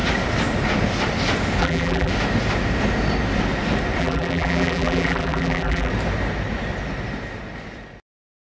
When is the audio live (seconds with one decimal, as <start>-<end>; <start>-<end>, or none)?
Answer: 0.0-1.6; 2.1-4.0; 5.9-8.5